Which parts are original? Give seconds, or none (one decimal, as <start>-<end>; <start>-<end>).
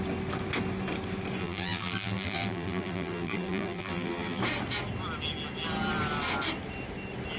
0.0-1.4; 4.4-7.4